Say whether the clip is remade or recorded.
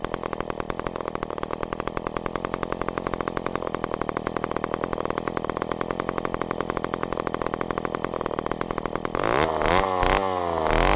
recorded